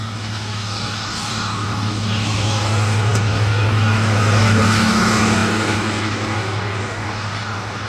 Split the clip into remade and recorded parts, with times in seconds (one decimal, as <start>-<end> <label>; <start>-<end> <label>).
0.0-7.9 remade